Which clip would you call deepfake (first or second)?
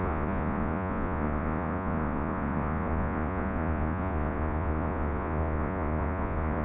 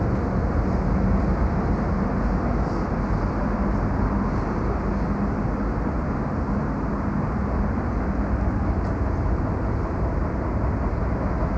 first